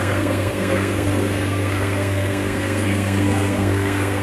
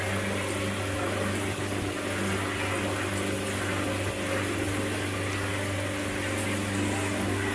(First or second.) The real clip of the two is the second